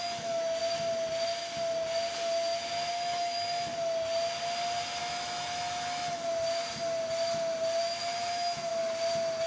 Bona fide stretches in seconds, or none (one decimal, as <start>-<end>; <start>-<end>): 0.6-2.9; 3.7-5.0; 6.3-7.8; 8.7-9.5